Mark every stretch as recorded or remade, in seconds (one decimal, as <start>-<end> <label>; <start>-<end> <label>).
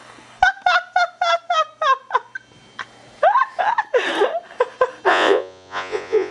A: 0.0-5.1 recorded; 5.1-6.3 remade